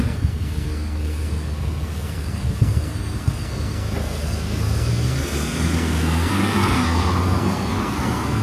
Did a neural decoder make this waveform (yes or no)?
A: yes